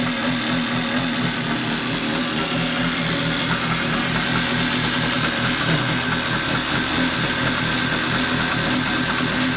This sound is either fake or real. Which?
real